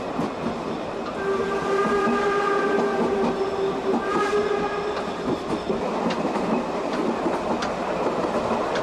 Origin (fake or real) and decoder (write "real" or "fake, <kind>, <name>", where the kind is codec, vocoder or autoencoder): real